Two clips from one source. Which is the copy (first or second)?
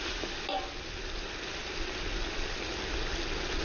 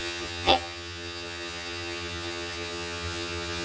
second